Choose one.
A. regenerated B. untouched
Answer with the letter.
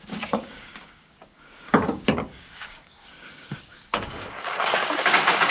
A